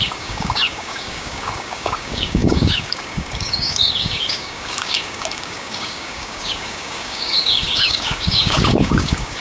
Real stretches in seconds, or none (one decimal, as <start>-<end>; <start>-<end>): none